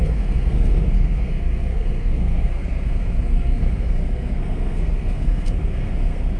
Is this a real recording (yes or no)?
no